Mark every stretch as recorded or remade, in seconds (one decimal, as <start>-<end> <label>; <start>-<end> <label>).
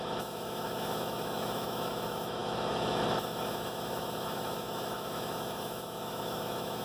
0.0-6.8 remade